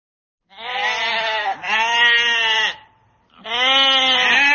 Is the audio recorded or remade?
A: recorded